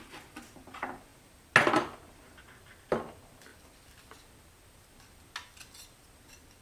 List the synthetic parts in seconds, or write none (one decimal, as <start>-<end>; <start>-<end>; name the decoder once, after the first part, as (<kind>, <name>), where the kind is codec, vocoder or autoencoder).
none